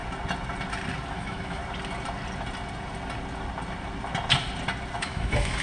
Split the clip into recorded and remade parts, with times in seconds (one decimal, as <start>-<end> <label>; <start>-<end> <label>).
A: 0.0-1.1 recorded; 1.1-1.6 remade; 1.6-5.0 recorded; 5.0-5.6 remade